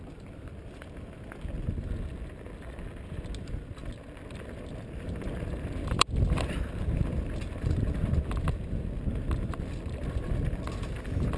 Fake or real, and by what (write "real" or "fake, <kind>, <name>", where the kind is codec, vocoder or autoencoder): real